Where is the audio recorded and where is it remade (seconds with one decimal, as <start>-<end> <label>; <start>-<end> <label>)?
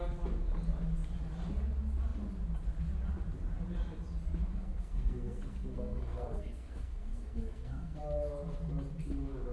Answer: 0.0-4.5 recorded; 4.5-8.0 remade; 8.0-9.5 recorded